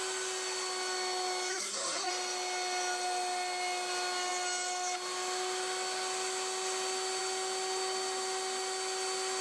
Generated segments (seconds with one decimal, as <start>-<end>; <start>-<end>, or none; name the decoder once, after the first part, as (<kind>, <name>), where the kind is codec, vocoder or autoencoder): 1.5-2.1 (codec, SNAC)